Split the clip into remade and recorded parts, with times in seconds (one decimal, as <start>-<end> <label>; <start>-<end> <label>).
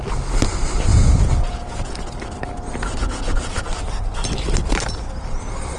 0.0-0.9 recorded; 0.9-1.9 remade; 1.9-3.0 recorded; 3.0-3.7 remade; 3.7-5.8 recorded